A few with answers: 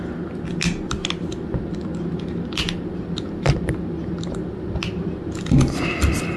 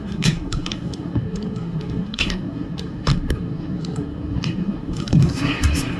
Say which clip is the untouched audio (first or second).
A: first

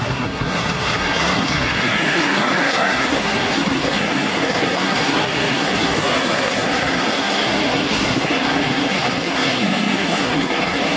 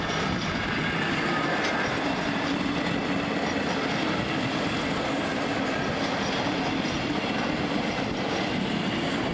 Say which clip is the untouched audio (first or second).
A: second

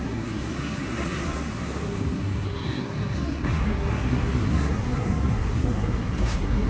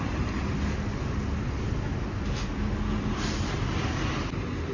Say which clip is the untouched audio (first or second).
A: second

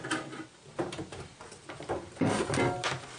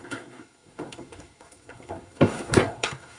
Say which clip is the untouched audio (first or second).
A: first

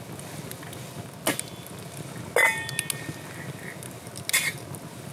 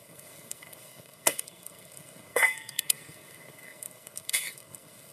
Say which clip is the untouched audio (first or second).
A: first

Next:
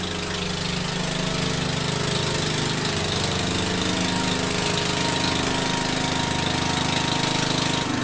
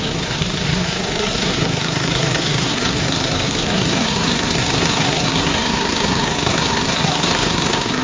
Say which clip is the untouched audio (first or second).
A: first